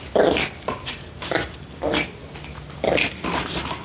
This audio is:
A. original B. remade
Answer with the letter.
A